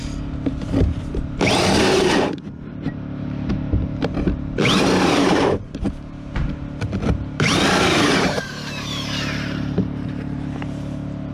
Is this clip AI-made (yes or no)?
yes